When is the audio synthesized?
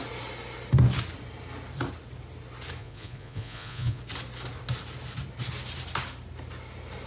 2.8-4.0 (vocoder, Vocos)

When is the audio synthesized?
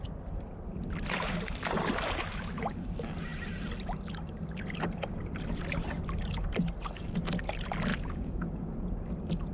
7.9-8.9 (vocoder, Vocos)